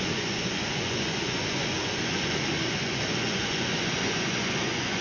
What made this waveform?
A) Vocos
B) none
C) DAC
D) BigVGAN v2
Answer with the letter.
A